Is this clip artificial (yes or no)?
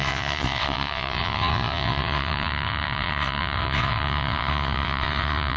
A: yes